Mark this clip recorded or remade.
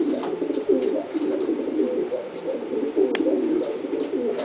recorded